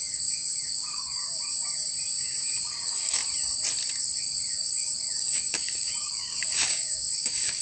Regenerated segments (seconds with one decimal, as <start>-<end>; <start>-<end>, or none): 0.0-1.2; 2.6-3.2; 4.0-7.6